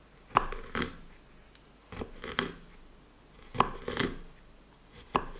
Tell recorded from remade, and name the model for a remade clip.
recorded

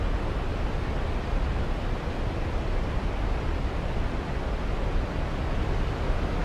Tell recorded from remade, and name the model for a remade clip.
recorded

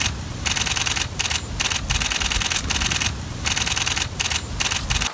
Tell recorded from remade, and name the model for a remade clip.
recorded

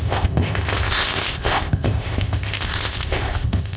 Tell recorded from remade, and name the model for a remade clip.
remade, codec, ZipCodec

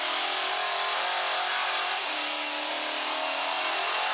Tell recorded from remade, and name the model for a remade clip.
recorded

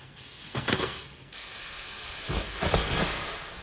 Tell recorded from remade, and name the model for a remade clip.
remade, codec, SNAC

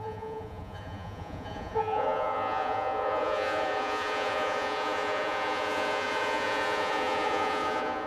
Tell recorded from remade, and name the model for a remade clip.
remade, vocoder, Vocos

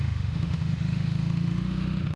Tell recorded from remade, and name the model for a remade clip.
remade, autoencoder, DAC-VAE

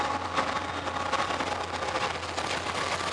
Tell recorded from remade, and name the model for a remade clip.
recorded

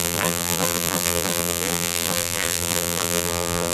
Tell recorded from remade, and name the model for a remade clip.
remade, vocoder, BigVGAN v2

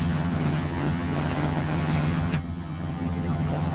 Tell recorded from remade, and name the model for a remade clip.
remade, vocoder, HiFi-GAN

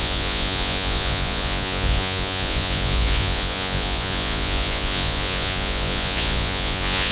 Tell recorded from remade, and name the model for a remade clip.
remade, vocoder, Vocos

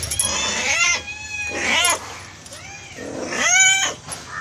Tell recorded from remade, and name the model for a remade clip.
recorded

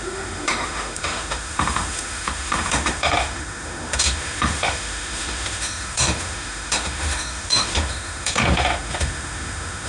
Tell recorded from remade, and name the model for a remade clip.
remade, autoencoder, DAC-VAE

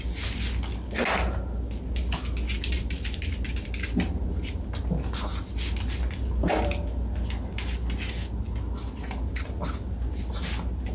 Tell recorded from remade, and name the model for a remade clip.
recorded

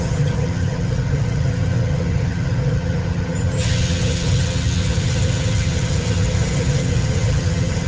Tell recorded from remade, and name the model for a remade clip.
remade, vocoder, HiFi-GAN